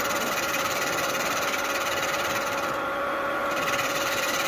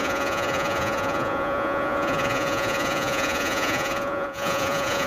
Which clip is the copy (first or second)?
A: second